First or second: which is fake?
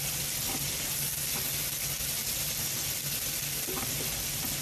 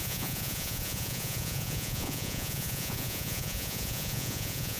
second